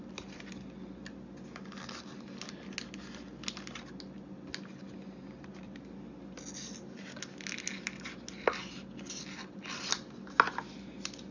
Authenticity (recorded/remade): recorded